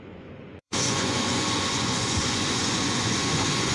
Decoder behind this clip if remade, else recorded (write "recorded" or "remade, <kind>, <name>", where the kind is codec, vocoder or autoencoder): remade, vocoder, Vocos